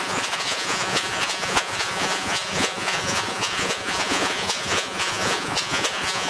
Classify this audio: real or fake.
fake